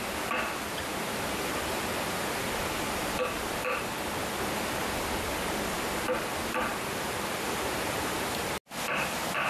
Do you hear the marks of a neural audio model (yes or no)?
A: no